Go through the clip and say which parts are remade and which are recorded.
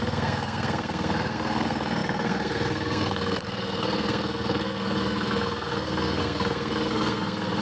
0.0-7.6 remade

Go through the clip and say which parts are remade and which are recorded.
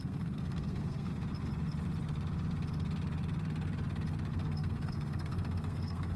0.0-1.1 remade; 1.1-4.3 recorded; 4.3-6.2 remade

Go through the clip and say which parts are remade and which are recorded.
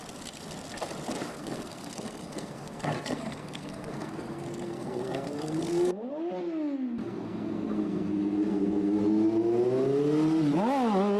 0.0-1.3 recorded; 1.3-6.1 remade; 6.1-7.0 recorded; 7.0-9.0 remade; 9.0-11.2 recorded